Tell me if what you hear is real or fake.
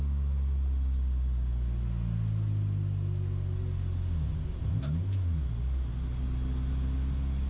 real